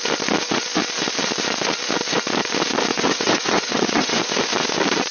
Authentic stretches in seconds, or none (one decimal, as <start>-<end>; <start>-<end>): 0.0-2.9; 4.2-5.1